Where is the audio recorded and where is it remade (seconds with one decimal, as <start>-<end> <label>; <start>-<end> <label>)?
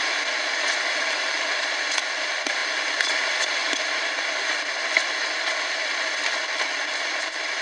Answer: 0.0-3.6 remade; 3.6-4.9 recorded; 4.9-7.6 remade